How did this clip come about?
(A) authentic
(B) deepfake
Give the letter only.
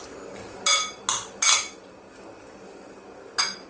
A